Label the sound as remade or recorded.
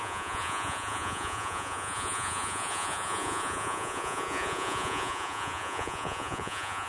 remade